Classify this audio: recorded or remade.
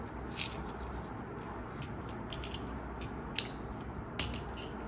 recorded